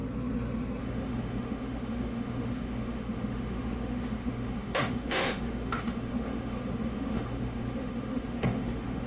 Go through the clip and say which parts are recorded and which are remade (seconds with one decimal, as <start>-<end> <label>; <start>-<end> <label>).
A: 0.0-0.8 recorded; 0.8-9.1 remade